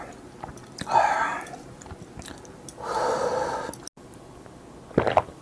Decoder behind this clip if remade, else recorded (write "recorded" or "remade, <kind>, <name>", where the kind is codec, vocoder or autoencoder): recorded